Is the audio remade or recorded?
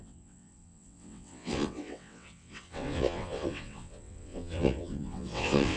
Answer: remade